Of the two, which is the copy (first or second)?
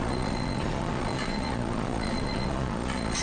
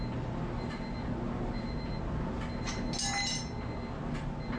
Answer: first